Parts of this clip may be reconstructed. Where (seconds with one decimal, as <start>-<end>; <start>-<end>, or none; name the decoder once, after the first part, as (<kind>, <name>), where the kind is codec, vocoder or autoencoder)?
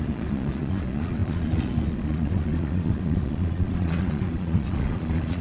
0.0-5.4 (vocoder, Vocos)